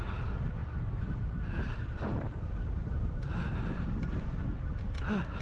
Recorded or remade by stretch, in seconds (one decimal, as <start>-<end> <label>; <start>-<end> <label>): 0.0-0.6 recorded; 0.6-3.8 remade; 3.8-5.4 recorded